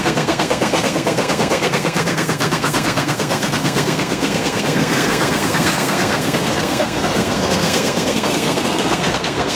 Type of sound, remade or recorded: remade